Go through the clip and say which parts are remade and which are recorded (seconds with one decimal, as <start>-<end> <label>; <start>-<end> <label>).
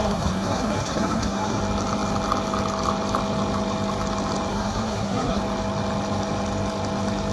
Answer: 0.0-1.6 remade; 1.6-4.5 recorded; 4.5-5.4 remade; 5.4-7.3 recorded